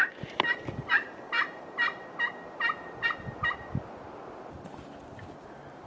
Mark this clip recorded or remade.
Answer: recorded